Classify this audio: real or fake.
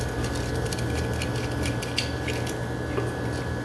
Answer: real